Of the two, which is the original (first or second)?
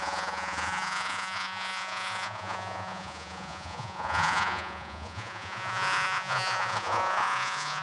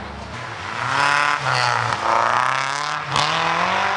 second